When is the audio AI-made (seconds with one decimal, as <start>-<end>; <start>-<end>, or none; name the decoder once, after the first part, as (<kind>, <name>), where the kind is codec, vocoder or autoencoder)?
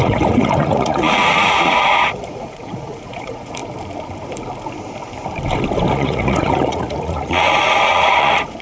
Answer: 0.0-3.6 (vocoder, Vocos); 5.9-8.6